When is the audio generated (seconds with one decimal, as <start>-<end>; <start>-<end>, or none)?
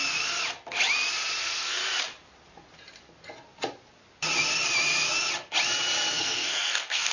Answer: 1.4-1.8; 6.1-7.1